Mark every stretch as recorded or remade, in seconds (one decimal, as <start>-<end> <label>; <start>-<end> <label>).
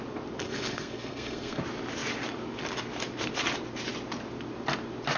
0.0-0.4 recorded; 0.4-1.6 remade; 1.6-5.2 recorded